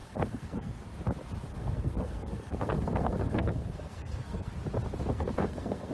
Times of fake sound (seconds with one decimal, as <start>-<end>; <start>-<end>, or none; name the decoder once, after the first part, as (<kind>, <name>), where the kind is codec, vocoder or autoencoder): 0.0-0.8 (codec, SNAC); 1.5-4.5; 5.1-5.9